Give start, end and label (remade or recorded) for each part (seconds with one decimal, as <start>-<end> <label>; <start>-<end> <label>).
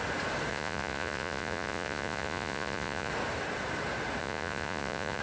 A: 0.0-0.5 recorded; 0.5-3.1 remade; 3.1-4.2 recorded; 4.2-5.2 remade